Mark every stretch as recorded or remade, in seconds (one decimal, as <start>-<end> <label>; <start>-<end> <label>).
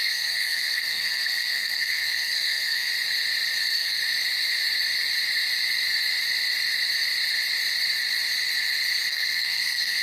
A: 0.0-2.9 remade; 2.9-3.6 recorded; 3.6-4.0 remade; 4.0-9.1 recorded; 9.1-10.0 remade